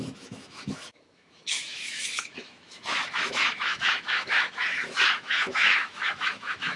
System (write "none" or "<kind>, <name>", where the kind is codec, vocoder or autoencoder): autoencoder, DAC-VAE